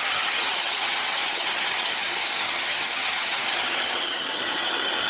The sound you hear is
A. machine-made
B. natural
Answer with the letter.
A